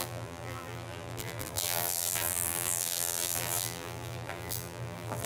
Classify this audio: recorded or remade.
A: remade